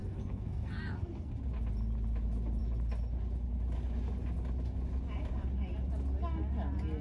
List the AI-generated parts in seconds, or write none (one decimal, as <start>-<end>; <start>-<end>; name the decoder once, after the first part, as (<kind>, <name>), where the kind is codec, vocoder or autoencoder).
0.0-1.3 (codec, SNAC)